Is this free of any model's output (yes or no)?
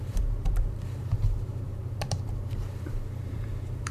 no